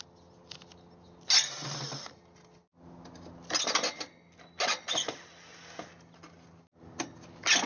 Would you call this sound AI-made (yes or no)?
no